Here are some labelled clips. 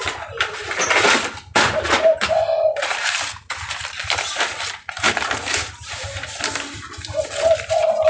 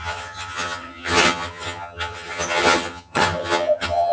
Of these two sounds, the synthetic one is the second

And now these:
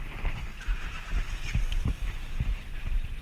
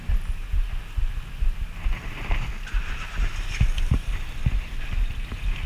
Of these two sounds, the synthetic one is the first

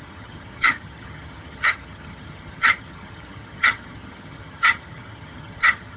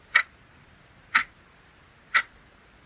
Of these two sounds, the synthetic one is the first